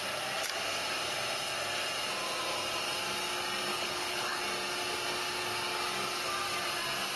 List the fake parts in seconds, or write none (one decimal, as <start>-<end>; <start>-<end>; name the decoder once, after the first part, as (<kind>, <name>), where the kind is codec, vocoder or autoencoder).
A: 3.7-4.4 (codec, HILCodec)